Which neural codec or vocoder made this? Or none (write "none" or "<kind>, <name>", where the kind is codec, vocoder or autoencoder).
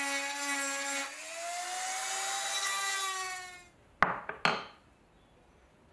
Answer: none